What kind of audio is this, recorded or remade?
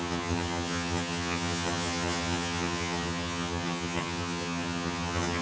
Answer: remade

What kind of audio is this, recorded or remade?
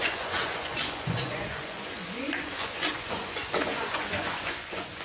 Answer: remade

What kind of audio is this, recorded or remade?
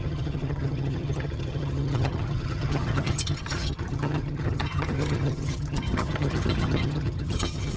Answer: remade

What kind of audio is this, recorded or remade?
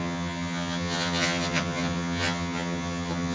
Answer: remade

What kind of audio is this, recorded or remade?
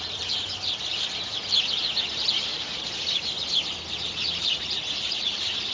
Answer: remade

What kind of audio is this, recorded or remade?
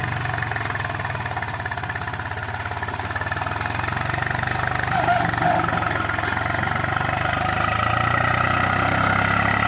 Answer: recorded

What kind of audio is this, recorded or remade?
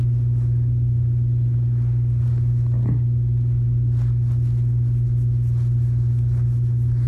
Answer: recorded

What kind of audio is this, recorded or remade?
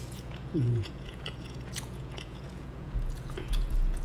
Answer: remade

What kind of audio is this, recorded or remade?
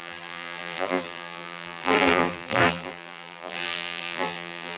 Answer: remade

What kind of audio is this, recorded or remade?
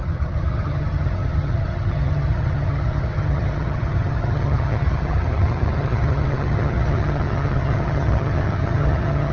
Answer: remade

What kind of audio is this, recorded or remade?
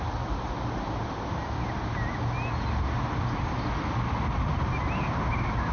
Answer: recorded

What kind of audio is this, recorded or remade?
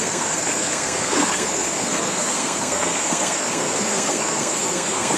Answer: remade